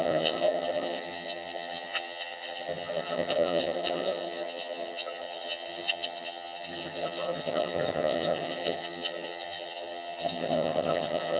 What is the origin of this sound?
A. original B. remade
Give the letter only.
B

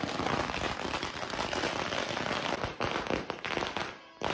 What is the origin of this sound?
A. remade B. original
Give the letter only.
B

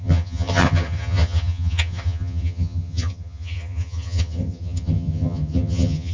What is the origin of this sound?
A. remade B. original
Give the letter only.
A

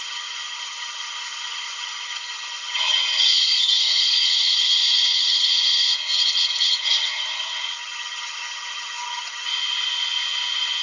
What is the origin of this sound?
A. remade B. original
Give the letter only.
A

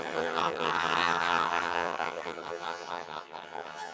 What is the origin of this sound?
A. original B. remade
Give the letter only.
B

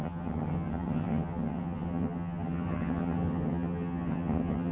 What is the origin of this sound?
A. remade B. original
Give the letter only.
A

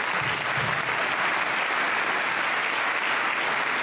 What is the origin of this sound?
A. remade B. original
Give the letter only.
B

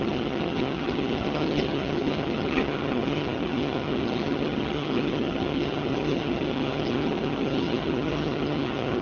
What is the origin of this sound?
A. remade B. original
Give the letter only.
A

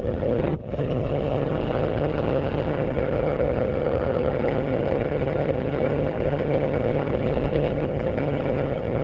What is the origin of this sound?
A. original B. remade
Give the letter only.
B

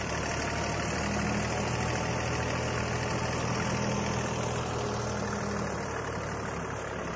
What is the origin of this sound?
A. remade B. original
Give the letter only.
B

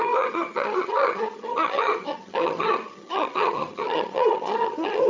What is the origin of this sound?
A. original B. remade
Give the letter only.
B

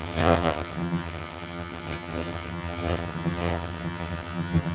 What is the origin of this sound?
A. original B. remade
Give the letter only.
B